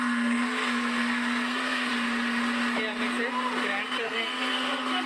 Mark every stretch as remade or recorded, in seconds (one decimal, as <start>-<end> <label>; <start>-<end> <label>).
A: 0.0-1.9 remade; 1.9-4.0 recorded; 4.0-5.1 remade